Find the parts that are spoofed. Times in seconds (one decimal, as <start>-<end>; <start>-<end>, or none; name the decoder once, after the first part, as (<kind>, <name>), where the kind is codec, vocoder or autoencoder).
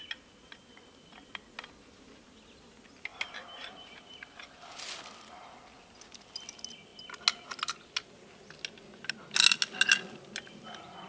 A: none